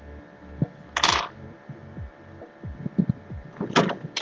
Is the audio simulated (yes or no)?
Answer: yes